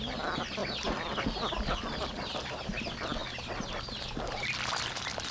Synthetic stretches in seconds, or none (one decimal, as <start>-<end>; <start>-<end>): none

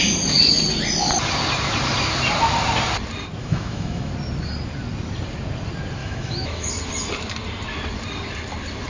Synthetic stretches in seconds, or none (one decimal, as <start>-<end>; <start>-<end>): 3.4-4.1; 6.0-6.7

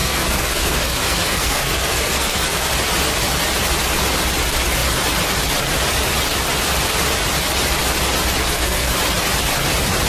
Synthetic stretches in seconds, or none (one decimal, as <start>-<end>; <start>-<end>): 0.0-2.7; 8.4-8.9

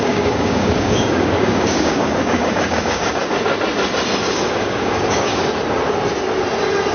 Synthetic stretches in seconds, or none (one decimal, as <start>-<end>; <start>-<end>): 0.0-3.2; 4.2-5.4

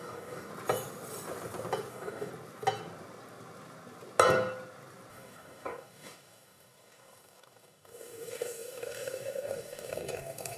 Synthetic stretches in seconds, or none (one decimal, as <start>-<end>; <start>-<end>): 0.0-0.5; 1.9-2.3; 5.1-10.6

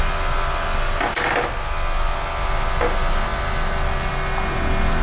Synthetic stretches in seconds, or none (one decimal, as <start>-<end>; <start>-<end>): none

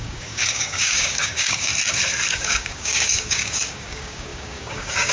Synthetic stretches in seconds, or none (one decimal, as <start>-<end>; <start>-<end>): 0.0-1.7; 2.3-5.1

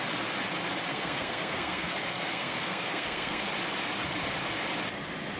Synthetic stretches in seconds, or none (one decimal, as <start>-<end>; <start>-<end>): 0.9-3.4